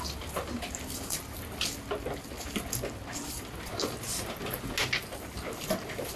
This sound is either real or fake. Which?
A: real